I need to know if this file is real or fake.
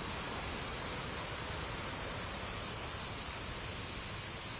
real